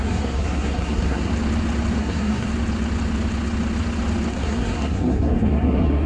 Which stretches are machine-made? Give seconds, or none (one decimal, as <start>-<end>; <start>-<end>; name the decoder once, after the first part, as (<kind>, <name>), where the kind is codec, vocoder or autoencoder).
0.0-1.3 (codec, SNAC); 2.0-2.5; 4.3-6.1